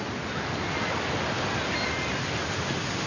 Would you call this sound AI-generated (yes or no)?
no